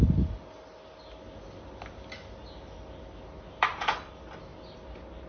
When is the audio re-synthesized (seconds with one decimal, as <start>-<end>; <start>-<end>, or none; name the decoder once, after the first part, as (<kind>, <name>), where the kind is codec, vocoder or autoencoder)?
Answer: none